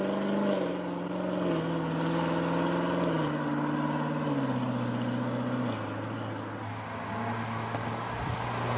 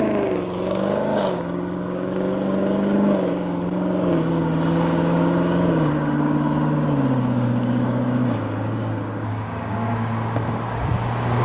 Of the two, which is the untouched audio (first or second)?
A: first